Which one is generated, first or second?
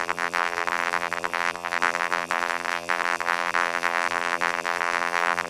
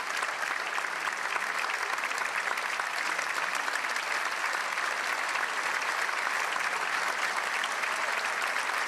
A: first